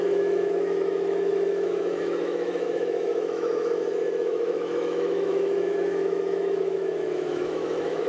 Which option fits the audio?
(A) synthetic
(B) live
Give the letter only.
A